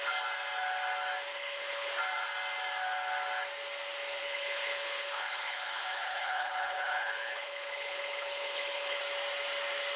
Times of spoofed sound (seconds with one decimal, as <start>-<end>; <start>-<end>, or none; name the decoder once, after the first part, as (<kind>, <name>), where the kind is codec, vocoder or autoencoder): 1.3-1.9 (codec, HILCodec); 4.2-9.0